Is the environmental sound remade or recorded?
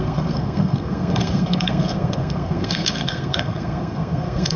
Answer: remade